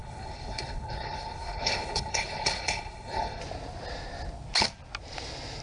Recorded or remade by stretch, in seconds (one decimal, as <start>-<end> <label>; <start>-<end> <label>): 0.0-3.4 remade; 3.4-5.6 recorded